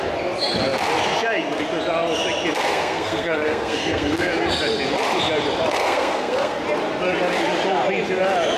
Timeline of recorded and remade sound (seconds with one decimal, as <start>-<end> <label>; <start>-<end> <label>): 0.0-2.7 recorded; 2.7-4.3 remade; 4.3-5.8 recorded; 5.8-6.6 remade; 6.6-8.6 recorded